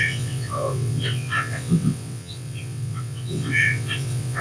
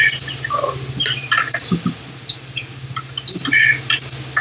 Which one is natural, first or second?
second